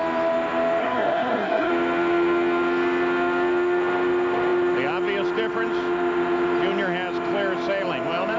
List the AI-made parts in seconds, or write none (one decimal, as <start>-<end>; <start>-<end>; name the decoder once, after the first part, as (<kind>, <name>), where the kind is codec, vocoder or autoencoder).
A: 0.8-1.7 (codec, SNAC)